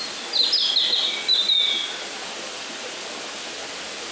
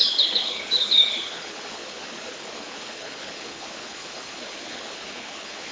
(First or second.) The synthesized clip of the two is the second